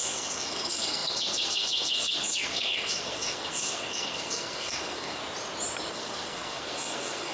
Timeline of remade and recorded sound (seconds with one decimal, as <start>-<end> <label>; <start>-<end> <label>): 0.0-5.2 remade; 5.2-5.9 recorded; 5.9-7.3 remade